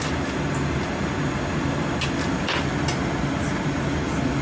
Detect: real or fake real